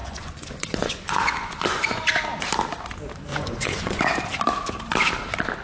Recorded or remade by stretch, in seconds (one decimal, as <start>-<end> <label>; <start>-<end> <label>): 0.0-2.0 remade; 2.0-3.3 recorded; 3.3-4.0 remade; 4.0-5.6 recorded